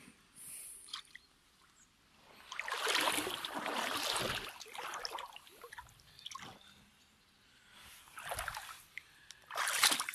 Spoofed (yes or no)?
no